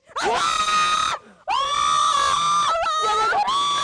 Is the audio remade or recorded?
recorded